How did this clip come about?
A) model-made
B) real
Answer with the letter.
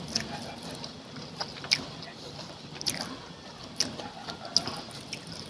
B